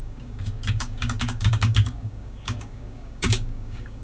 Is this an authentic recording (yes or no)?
no